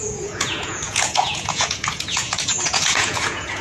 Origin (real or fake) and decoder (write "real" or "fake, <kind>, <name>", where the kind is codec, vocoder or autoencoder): fake, vocoder, Vocos